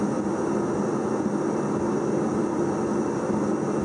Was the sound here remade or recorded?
recorded